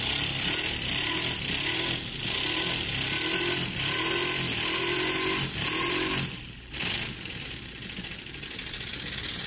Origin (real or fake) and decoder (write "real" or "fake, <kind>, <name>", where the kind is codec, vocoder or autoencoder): real